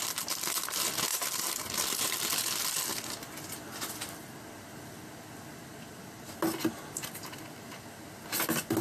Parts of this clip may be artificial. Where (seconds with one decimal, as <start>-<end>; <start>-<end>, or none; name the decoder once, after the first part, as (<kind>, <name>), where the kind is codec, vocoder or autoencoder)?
1.1-2.5 (vocoder, BigVGAN v2)